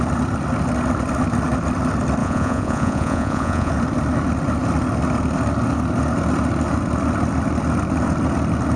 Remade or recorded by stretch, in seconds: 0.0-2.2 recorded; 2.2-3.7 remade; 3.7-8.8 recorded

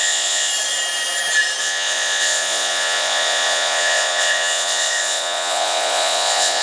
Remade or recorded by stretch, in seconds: 0.0-0.5 remade; 0.5-1.6 recorded; 1.6-6.6 remade

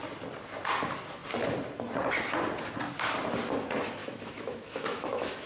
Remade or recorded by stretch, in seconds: 0.0-4.0 recorded; 4.0-5.5 remade

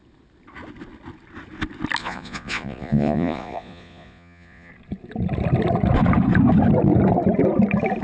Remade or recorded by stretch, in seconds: 0.0-2.0 recorded; 2.0-4.7 remade; 4.7-8.0 recorded

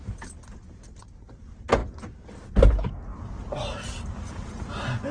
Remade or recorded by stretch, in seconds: 0.0-5.1 recorded